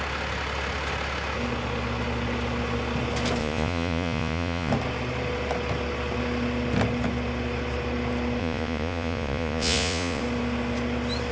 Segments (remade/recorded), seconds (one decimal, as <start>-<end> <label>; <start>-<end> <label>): 0.0-3.4 recorded; 3.4-4.7 remade; 4.7-8.4 recorded; 8.4-10.2 remade; 10.2-11.3 recorded